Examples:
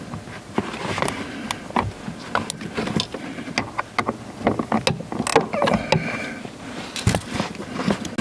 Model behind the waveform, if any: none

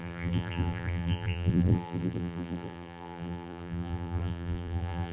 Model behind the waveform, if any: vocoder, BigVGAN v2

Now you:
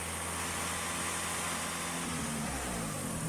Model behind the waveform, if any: none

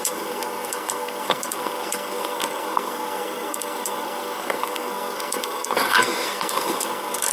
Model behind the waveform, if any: codec, SNAC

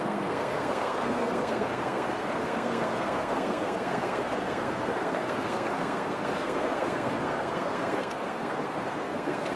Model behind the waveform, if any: codec, SNAC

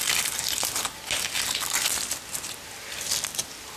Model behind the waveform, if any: none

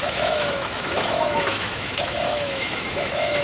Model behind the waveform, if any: autoencoder, DAC-VAE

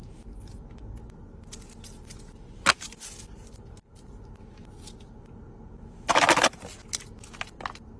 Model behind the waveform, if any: none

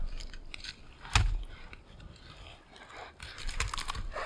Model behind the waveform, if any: none